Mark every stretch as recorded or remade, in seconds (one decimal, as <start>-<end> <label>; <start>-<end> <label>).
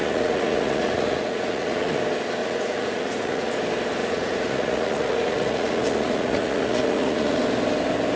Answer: 0.0-2.0 remade; 2.0-2.4 recorded; 2.4-3.5 remade; 3.5-4.0 recorded; 4.0-7.4 remade; 7.4-8.2 recorded